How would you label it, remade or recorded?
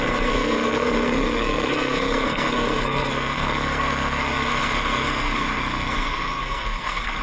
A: remade